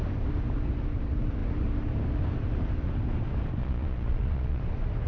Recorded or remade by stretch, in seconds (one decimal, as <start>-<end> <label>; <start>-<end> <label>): 0.0-3.6 recorded; 3.6-4.6 remade; 4.6-5.1 recorded